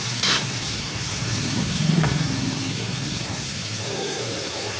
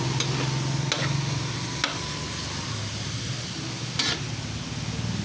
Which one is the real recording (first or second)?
second